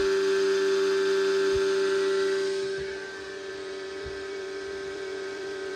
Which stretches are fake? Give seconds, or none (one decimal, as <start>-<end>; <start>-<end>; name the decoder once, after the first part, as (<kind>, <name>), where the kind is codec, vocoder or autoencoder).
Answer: 3.5-5.8 (vocoder, BigVGAN v2)